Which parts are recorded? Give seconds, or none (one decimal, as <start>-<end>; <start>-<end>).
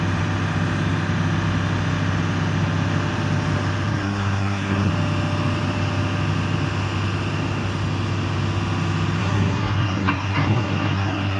0.0-3.9; 4.9-9.2